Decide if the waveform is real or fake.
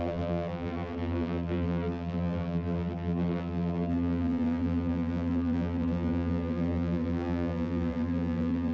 fake